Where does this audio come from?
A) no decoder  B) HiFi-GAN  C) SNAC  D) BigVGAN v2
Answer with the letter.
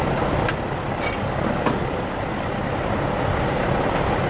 A